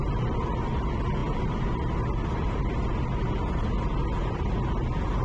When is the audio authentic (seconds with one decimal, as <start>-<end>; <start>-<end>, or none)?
0.0-5.2